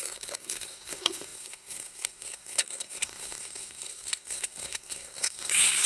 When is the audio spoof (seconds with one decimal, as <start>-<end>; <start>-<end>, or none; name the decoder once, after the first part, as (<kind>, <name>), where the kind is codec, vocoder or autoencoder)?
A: 0.0-5.9 (codec, SNAC)